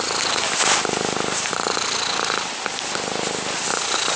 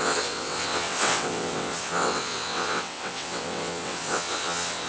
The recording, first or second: first